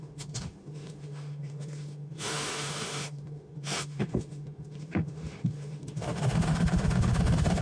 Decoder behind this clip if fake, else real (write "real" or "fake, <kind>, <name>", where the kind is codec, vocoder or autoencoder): fake, autoencoder, DAC-VAE